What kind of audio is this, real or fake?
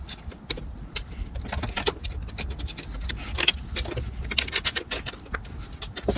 real